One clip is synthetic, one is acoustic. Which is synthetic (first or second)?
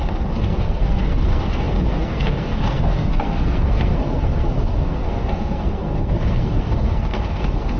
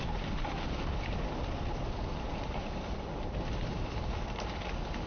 first